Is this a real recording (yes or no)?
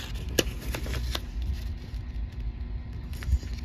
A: yes